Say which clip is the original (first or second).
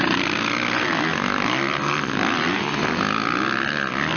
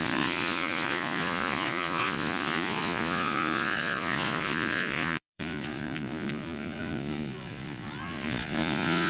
first